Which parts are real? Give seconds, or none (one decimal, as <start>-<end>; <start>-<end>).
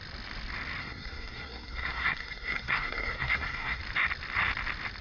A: 0.0-0.8; 3.8-5.0